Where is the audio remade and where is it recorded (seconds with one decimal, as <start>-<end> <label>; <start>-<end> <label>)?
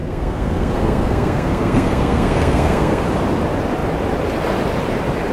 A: 0.0-3.0 remade; 3.0-5.3 recorded